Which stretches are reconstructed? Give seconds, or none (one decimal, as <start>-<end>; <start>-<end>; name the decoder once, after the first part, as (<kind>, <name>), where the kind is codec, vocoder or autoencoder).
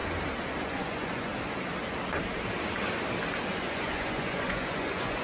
0.6-1.3 (vocoder, Vocos); 3.5-5.2